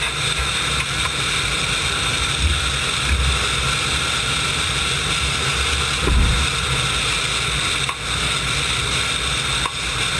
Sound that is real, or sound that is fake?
real